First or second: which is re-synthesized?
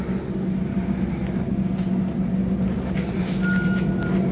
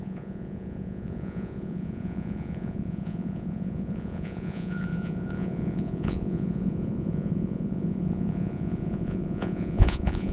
second